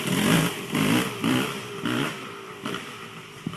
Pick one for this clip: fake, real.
fake